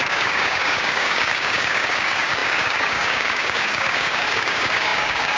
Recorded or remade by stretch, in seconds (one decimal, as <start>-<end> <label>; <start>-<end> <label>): 0.0-5.4 remade